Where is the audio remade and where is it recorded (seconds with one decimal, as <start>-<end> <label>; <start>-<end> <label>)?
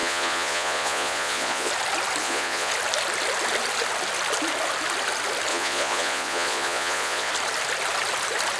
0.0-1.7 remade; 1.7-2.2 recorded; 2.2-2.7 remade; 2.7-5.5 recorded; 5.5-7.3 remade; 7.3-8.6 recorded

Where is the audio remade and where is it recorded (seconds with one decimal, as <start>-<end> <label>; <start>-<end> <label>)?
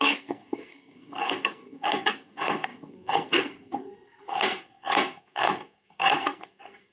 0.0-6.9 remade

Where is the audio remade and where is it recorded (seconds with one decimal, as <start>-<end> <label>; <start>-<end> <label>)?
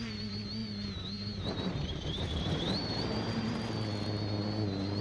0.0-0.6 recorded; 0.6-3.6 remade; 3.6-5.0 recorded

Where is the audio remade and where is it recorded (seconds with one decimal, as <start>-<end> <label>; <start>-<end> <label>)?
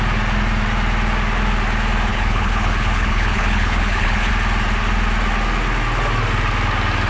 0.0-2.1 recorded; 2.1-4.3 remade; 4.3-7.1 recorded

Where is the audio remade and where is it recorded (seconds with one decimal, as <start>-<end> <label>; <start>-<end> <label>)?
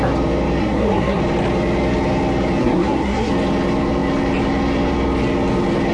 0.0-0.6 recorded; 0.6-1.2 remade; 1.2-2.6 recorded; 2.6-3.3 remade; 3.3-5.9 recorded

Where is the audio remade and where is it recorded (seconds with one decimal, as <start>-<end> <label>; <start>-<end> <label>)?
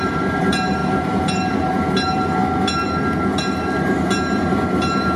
0.0-2.4 remade; 2.4-4.5 recorded; 4.5-5.2 remade